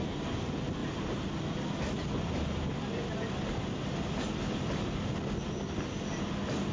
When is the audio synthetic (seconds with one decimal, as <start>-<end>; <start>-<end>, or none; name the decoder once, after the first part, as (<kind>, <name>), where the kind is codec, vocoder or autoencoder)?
none